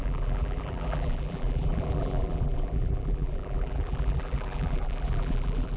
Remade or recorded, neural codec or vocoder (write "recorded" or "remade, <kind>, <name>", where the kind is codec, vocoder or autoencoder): remade, vocoder, BigVGAN v2